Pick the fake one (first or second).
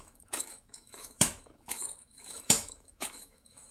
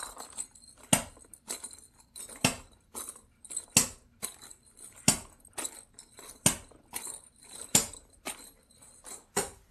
first